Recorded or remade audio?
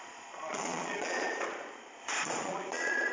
remade